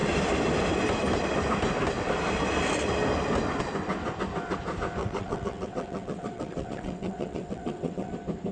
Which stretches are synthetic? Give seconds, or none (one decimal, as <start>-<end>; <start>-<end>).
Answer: 5.0-8.1